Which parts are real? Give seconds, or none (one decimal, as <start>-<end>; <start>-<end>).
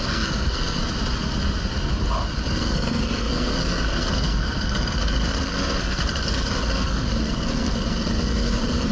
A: 0.8-2.5